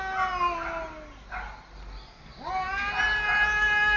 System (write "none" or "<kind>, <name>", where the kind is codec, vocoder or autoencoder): none